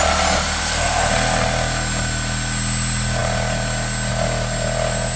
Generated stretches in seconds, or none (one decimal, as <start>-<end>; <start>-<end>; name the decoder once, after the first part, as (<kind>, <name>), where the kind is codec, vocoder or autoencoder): 0.6-1.1 (codec, SNAC)